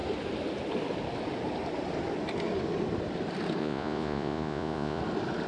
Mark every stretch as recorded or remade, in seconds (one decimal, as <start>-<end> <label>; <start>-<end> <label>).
0.0-3.6 recorded; 3.6-5.0 remade; 5.0-5.5 recorded

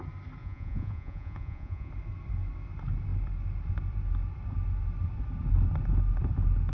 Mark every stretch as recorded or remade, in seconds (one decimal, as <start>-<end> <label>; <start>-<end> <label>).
0.0-0.4 recorded; 0.4-1.9 remade; 1.9-6.7 recorded

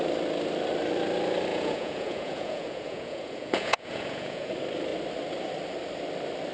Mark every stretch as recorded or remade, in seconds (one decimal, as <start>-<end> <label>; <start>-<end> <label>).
0.0-1.5 recorded; 1.5-4.5 remade; 4.5-6.5 recorded

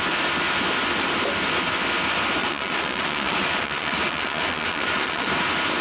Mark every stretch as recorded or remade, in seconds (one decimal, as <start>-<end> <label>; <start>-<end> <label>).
0.0-2.4 recorded; 2.4-5.3 remade; 5.3-5.8 recorded

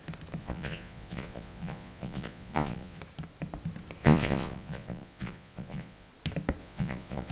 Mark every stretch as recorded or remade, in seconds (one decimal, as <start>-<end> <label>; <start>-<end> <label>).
0.0-0.4 recorded; 0.4-3.0 remade; 3.0-4.0 recorded; 4.0-6.1 remade; 6.1-6.6 recorded; 6.6-7.3 remade

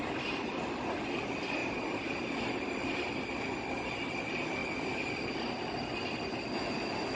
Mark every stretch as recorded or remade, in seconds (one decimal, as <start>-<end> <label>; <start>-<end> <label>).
0.0-7.2 recorded